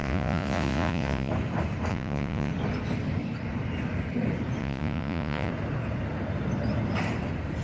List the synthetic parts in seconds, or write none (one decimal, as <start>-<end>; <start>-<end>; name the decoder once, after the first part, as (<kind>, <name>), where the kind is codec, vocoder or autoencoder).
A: 0.0-1.3 (vocoder, Vocos); 1.9-2.5; 4.6-5.5